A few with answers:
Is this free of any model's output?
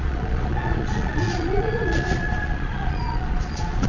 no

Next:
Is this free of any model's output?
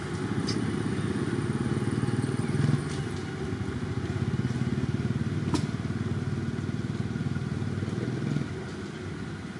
yes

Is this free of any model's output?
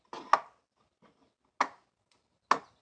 yes